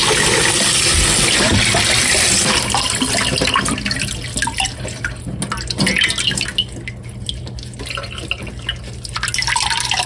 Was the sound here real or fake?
real